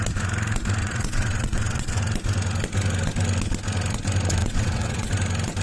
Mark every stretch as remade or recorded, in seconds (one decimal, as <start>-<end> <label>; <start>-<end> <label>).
0.0-0.8 recorded; 0.8-2.0 remade; 2.0-4.4 recorded; 4.4-5.1 remade; 5.1-5.6 recorded